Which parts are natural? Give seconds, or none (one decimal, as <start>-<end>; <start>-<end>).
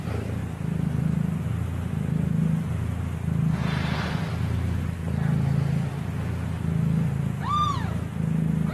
0.0-8.7